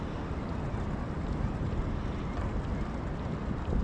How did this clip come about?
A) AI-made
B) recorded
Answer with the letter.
B